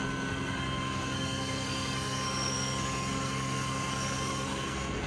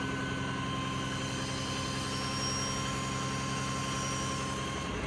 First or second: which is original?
second